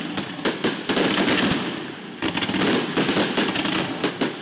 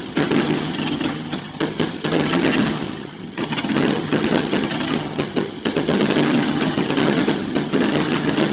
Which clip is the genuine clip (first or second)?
first